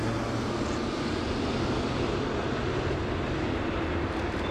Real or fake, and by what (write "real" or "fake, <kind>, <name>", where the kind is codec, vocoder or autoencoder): real